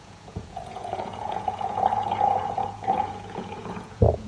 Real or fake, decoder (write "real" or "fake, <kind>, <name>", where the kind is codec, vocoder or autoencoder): fake, vocoder, Vocos